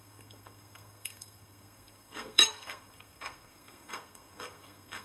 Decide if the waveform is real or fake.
fake